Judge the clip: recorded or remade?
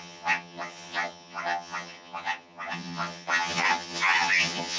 remade